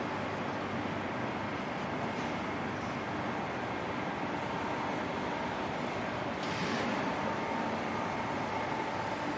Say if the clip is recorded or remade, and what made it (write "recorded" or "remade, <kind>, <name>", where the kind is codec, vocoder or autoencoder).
recorded